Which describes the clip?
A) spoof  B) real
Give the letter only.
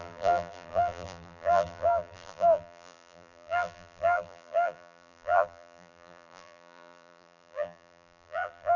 A